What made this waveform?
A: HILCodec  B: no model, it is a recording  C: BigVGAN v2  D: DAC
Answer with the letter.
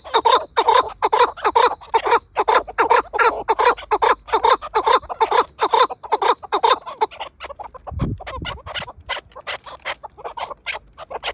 B